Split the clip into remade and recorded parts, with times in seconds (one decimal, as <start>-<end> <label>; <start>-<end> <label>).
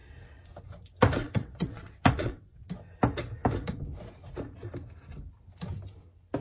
0.0-1.2 recorded; 1.2-2.7 remade; 2.7-6.4 recorded